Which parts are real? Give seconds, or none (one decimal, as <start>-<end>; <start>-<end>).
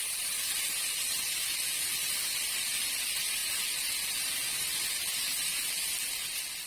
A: 0.0-6.7